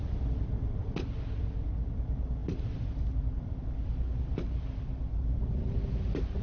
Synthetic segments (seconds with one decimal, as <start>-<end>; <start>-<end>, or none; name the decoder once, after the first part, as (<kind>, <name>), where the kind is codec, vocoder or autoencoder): none